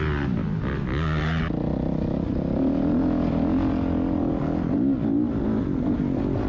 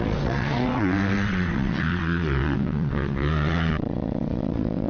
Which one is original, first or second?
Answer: first